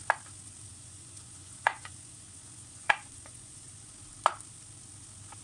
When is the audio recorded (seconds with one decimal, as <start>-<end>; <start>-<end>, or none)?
0.0-0.7; 3.9-5.4

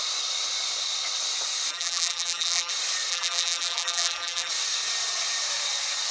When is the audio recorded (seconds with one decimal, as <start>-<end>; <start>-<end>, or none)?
0.0-1.7; 2.7-3.1; 4.5-6.1

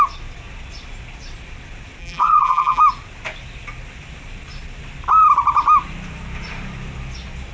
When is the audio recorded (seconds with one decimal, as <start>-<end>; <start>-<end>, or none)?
0.0-2.0; 2.8-7.5

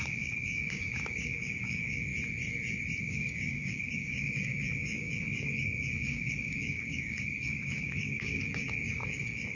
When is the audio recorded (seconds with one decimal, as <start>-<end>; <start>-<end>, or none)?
2.1-3.0

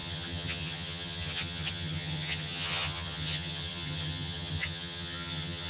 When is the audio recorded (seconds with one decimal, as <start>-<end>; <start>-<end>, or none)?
none

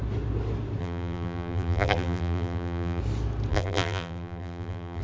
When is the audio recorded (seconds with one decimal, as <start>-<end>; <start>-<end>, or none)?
0.0-0.8; 3.0-3.5